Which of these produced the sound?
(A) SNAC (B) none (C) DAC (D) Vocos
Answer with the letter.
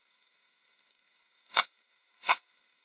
A